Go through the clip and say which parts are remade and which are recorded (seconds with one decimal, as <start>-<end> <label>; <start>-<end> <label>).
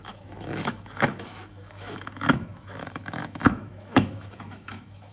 0.0-5.1 remade